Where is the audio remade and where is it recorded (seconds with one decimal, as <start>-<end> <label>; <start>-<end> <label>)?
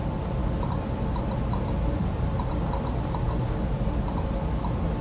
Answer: 0.0-5.0 recorded